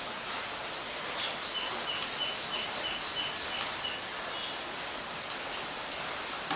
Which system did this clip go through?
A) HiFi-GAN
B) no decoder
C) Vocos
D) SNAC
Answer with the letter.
B